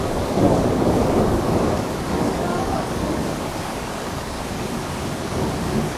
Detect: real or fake fake